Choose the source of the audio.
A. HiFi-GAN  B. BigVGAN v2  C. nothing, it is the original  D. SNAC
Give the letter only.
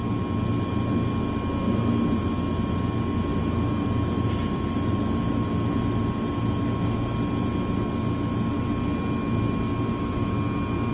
C